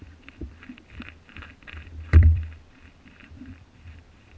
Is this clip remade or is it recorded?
remade